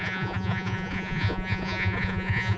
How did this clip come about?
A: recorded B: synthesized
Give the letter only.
B